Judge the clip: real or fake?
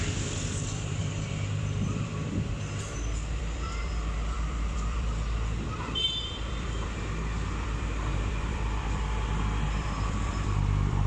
fake